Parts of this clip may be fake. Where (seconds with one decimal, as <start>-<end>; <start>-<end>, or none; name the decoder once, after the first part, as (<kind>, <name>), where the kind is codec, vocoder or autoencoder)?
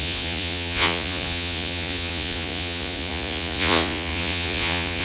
0.0-5.0 (vocoder, Vocos)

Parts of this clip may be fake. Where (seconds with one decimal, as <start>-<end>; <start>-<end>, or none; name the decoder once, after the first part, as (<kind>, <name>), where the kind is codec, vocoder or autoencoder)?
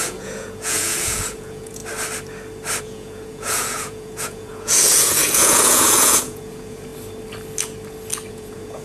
0.0-1.8 (vocoder, Vocos); 2.8-6.9; 8.3-8.8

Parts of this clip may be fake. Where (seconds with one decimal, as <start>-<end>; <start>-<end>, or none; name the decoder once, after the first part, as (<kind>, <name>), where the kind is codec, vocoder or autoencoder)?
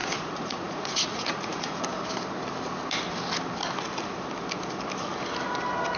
0.0-1.8 (vocoder, Vocos)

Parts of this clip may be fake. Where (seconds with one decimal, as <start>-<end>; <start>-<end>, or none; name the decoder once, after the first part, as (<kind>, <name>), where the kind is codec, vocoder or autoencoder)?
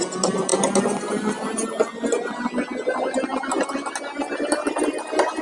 none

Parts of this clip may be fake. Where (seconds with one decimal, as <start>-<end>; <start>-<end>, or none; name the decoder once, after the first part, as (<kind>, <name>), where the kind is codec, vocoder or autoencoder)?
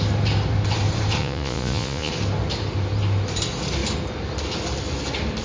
1.2-2.1 (vocoder, Vocos)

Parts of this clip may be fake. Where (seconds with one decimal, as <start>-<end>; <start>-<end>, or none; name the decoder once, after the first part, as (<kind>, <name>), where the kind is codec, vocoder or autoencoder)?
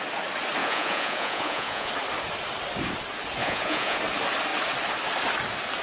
0.6-1.9 (vocoder, Vocos); 3.4-4.0